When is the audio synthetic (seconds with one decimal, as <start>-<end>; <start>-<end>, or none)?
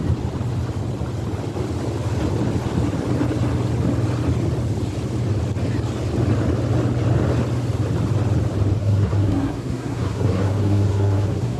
8.8-11.6